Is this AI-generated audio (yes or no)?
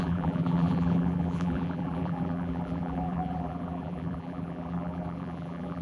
yes